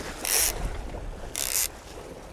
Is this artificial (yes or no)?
yes